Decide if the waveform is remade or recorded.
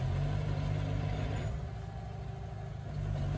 recorded